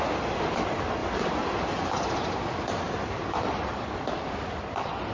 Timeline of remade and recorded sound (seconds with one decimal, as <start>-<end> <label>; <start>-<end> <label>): 0.0-5.1 recorded